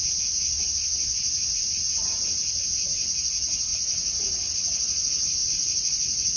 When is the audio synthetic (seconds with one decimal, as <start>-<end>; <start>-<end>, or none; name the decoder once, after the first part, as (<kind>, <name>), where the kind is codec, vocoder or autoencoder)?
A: 3.7-4.5 (vocoder, Vocos); 5.4-6.4